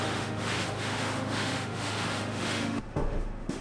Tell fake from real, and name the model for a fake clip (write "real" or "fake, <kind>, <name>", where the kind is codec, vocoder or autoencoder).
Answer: fake, autoencoder, DAC-VAE